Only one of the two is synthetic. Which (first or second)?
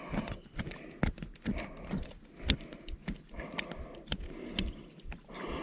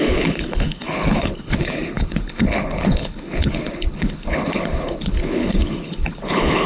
second